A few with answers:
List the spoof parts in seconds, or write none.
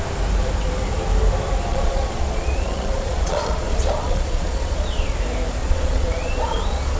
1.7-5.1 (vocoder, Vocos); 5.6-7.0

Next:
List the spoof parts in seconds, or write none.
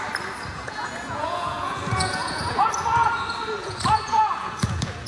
0.5-2.7 (vocoder, Vocos); 3.6-5.1